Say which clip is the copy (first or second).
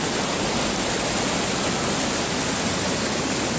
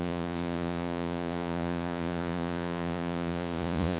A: second